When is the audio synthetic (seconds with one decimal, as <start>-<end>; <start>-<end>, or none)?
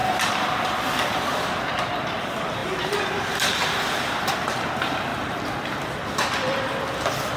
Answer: 2.2-7.4